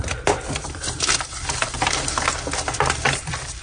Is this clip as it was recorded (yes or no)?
no